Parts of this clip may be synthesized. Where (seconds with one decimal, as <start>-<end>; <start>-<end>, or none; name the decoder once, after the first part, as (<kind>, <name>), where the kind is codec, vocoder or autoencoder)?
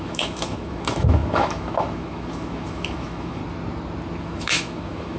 0.0-3.4 (autoencoder, DAC-VAE); 4.2-5.2